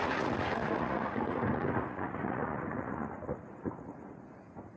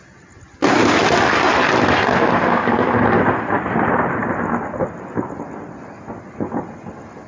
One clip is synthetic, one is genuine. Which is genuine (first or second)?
second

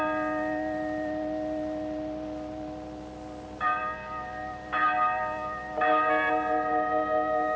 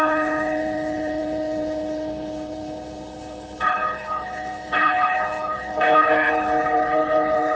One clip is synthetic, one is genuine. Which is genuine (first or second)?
first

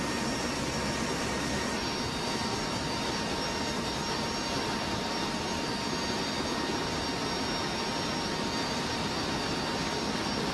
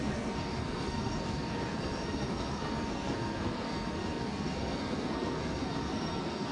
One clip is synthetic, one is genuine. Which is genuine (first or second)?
first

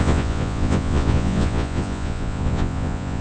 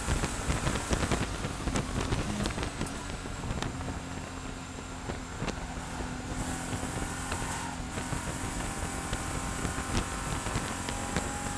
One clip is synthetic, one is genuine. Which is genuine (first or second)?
second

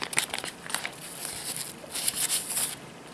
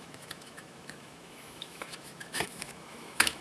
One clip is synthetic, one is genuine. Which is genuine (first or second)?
first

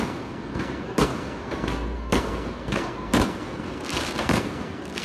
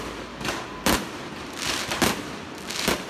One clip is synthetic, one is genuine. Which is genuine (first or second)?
second